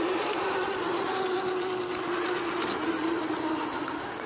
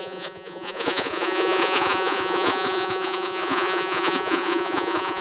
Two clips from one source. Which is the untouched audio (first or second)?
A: first